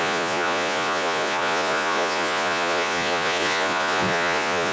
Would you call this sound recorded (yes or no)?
no